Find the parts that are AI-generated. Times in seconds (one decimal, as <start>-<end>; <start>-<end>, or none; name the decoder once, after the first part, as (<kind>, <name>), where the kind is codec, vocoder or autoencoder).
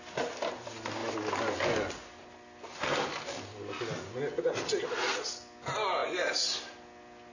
none